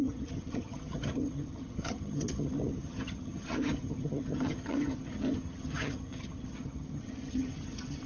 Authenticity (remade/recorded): remade